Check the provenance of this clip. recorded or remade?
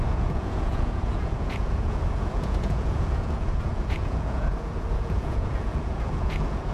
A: remade